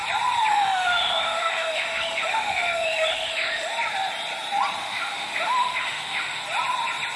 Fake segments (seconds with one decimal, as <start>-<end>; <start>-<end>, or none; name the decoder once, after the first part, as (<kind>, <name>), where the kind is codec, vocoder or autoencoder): 0.5-3.7 (autoencoder, DAC-VAE); 4.8-6.4